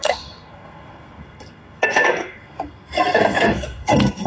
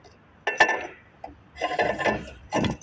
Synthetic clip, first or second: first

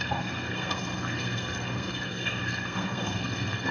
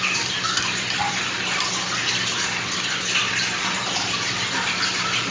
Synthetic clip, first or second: first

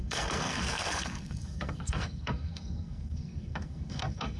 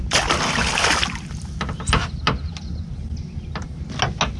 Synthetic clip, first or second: first